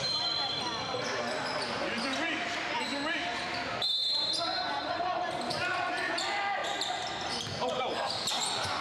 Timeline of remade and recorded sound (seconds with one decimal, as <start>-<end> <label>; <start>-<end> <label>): 0.0-8.8 remade